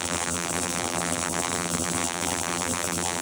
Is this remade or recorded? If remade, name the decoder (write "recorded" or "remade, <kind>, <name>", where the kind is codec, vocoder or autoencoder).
remade, vocoder, BigVGAN v2